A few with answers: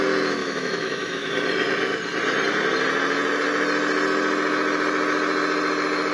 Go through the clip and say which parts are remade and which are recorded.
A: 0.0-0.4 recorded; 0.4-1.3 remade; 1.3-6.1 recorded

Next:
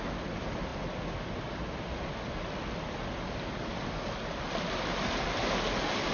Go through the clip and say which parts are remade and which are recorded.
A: 0.0-6.1 recorded

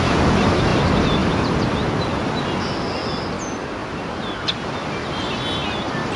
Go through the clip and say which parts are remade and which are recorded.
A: 0.0-6.2 recorded

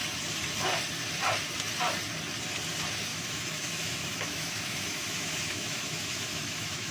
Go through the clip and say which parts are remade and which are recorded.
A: 0.0-3.1 recorded; 3.1-6.9 remade

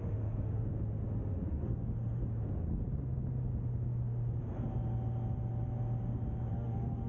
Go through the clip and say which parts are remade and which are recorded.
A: 0.0-0.7 remade; 0.7-1.5 recorded; 1.5-2.2 remade; 2.2-6.5 recorded; 6.5-7.1 remade

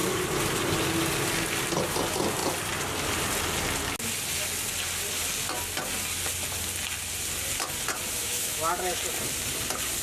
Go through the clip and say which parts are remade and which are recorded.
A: 0.0-8.2 recorded; 8.2-9.0 remade; 9.0-10.0 recorded

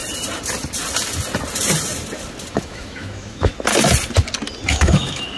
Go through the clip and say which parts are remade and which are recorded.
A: 0.0-2.5 recorded; 2.5-3.5 remade; 3.5-4.7 recorded; 4.7-5.4 remade